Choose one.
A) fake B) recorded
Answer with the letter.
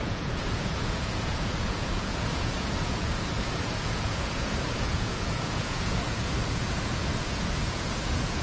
A